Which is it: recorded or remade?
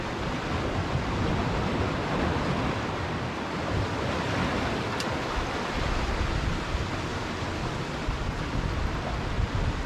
recorded